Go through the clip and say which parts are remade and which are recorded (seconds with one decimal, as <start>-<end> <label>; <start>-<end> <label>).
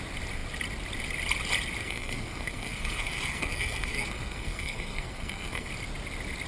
0.0-1.8 recorded; 1.8-5.7 remade; 5.7-6.5 recorded